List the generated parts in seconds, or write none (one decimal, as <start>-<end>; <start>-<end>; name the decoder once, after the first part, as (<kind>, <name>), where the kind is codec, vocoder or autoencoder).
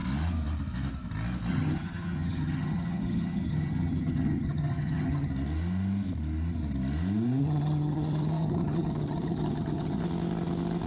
1.5-5.3 (vocoder, HiFi-GAN); 7.4-10.0